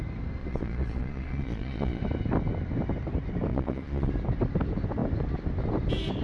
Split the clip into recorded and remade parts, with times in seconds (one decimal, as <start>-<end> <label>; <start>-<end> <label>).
0.0-0.4 recorded; 0.4-2.0 remade; 2.0-3.5 recorded; 3.5-4.1 remade; 4.1-6.2 recorded